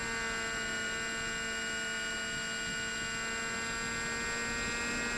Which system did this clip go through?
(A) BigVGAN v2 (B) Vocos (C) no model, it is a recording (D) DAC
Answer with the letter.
C